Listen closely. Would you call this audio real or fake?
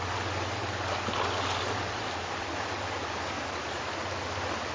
real